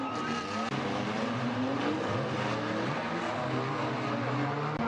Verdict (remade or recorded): recorded